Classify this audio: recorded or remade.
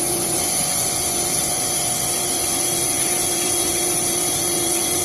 remade